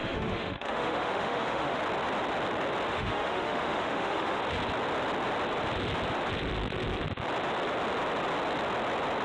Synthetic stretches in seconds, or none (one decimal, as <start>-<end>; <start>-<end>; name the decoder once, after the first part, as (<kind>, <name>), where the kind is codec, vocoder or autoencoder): 0.0-1.8 (autoencoder, DAC-VAE); 2.9-4.4